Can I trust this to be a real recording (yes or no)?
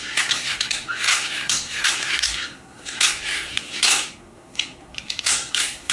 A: no